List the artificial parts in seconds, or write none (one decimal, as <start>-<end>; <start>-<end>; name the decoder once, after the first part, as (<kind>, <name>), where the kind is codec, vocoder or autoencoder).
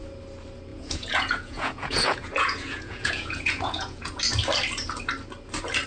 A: 0.7-4.2 (vocoder, Vocos)